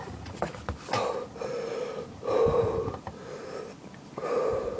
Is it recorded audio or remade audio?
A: recorded